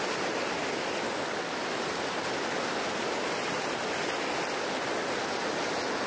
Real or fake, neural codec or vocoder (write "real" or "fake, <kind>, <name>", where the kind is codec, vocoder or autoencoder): real